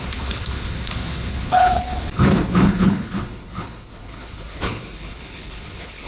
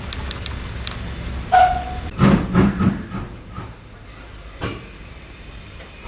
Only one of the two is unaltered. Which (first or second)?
second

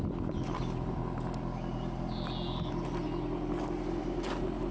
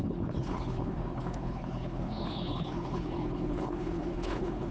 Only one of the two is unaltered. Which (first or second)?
first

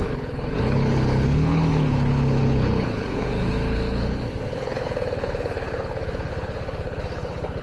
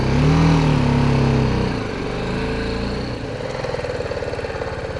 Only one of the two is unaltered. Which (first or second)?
second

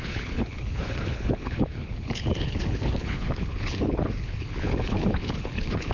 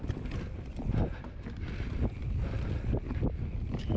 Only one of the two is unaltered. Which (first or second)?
second